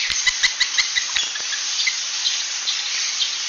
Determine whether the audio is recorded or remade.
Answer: remade